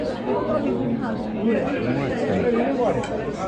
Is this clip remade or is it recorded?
recorded